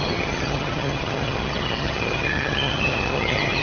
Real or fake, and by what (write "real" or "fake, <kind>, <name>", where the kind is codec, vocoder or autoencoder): fake, vocoder, HiFi-GAN